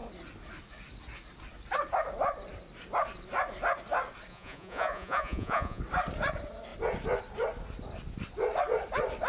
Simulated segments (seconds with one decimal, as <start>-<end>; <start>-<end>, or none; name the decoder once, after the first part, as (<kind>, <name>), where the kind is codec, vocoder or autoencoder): 4.3-5.8 (vocoder, Vocos)